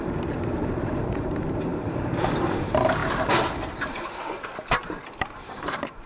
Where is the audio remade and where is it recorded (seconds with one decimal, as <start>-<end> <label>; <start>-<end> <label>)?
0.0-3.0 remade; 3.0-3.8 recorded; 3.8-6.1 remade